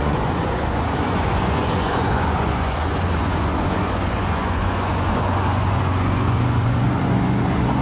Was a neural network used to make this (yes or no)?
yes